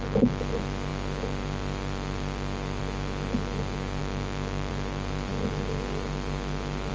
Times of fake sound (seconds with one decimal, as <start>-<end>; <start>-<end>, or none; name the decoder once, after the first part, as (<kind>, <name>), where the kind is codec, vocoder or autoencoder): 4.0-4.7 (autoencoder, DAC-VAE)